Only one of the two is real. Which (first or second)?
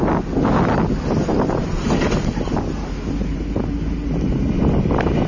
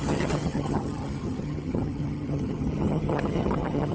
first